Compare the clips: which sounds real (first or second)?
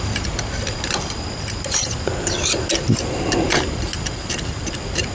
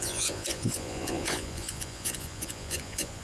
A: first